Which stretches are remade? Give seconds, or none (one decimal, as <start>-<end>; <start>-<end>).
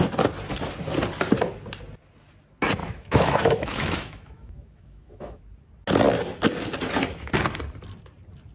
2.8-5.4